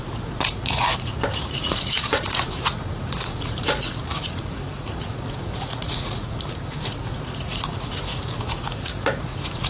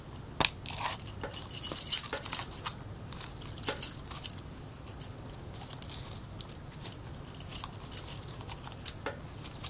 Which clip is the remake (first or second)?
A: first